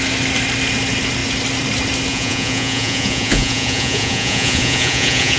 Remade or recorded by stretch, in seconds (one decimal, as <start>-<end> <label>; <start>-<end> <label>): 0.0-2.1 recorded; 2.1-5.4 remade